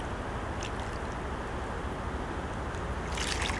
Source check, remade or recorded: recorded